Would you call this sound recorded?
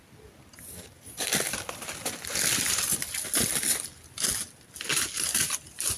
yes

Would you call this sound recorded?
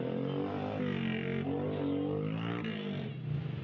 yes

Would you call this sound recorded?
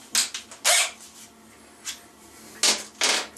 yes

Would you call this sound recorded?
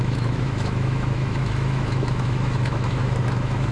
no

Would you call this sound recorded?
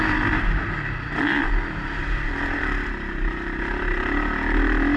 yes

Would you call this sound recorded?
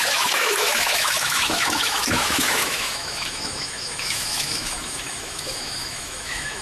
no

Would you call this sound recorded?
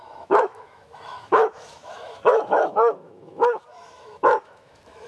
no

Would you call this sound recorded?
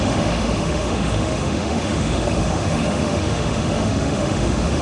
no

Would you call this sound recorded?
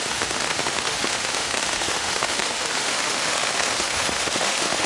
no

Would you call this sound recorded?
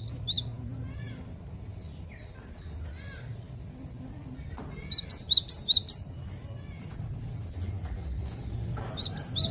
yes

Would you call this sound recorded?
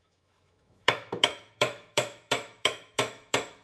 no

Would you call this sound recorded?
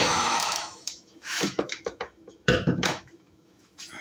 no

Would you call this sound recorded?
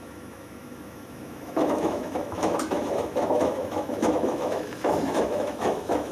no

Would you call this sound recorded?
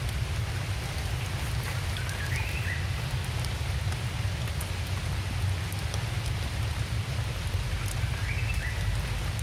yes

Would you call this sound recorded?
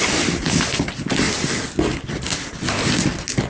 yes